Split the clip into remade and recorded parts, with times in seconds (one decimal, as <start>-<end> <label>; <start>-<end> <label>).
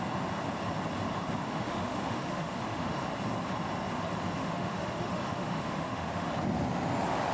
0.0-1.4 recorded; 1.4-3.0 remade; 3.0-4.4 recorded; 4.4-6.3 remade; 6.3-7.3 recorded